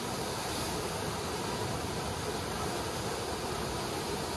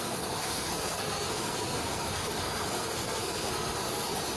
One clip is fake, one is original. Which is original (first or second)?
first